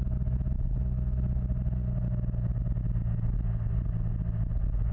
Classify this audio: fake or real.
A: real